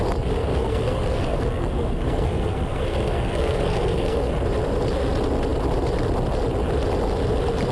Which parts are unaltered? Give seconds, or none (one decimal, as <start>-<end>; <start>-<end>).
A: 0.0-0.4; 4.3-7.7